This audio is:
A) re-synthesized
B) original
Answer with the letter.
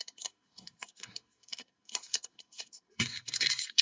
A